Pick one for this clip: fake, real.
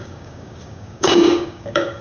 fake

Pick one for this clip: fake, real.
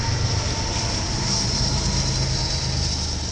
real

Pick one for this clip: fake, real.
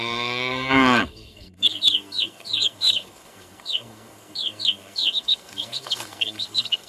fake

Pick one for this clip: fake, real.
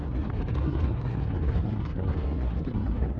fake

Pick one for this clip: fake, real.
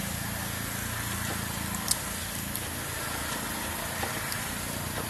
real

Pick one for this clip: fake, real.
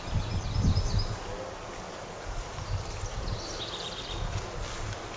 real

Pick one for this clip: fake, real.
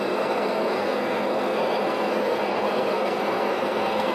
fake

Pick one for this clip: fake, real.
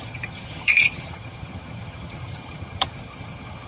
fake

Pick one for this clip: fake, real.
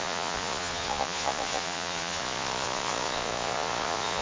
fake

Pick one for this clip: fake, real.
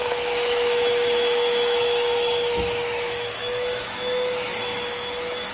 fake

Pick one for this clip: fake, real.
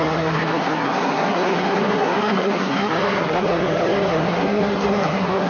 fake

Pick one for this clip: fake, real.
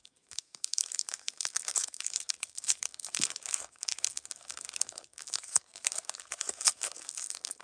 fake